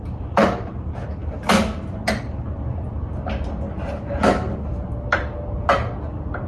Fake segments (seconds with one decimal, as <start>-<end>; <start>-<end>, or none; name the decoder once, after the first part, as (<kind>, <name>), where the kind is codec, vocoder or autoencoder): none